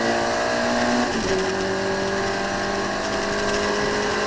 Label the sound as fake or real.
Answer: real